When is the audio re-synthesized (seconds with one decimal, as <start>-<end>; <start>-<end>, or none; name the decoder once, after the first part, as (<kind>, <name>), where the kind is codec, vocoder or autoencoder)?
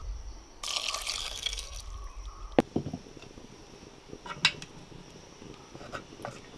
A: 1.2-1.8 (codec, SNAC)